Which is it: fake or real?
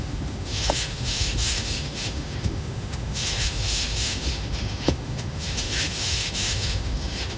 fake